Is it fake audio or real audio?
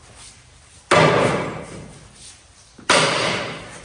real